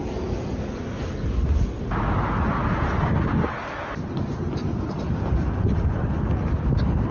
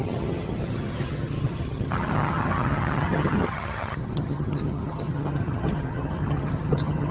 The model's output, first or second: second